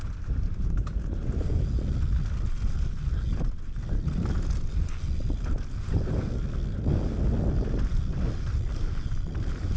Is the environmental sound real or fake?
real